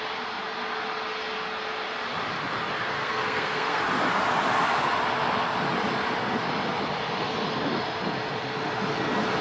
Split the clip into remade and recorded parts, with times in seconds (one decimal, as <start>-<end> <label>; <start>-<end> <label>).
0.0-2.9 recorded; 2.9-3.8 remade; 3.8-9.4 recorded